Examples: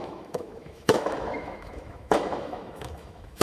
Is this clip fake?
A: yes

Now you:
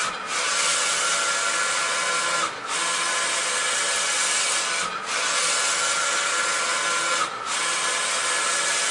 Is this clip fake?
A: no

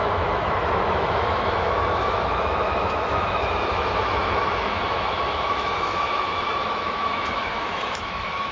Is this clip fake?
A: yes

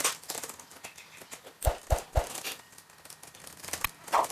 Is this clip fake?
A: no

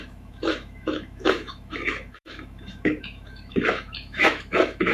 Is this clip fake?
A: yes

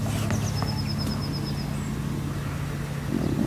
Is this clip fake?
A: no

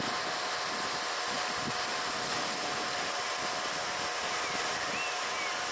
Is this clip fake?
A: no